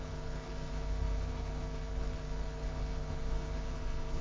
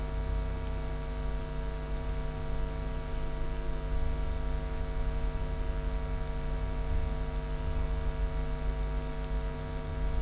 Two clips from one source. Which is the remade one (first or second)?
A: first